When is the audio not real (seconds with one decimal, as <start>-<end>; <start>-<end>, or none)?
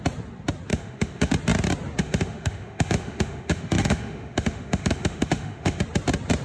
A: 0.7-1.3; 2.0-5.8